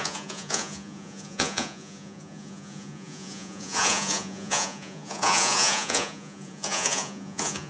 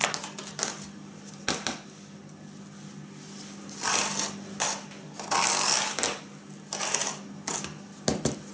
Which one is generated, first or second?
first